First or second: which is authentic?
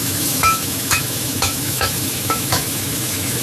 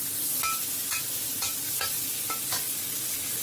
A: second